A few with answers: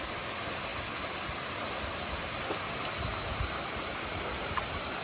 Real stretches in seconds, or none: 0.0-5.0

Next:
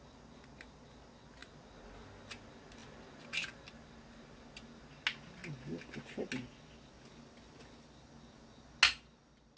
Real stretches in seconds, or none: 0.0-9.6

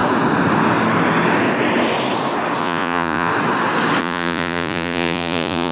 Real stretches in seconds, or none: 0.0-2.6; 3.3-4.0

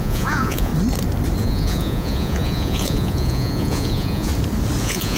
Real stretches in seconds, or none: 0.7-1.4; 4.3-4.8

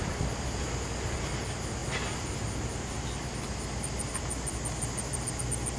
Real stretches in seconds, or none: 0.0-5.8